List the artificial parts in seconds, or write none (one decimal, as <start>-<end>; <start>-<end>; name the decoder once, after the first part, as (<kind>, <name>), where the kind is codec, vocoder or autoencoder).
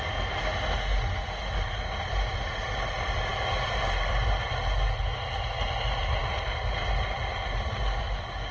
none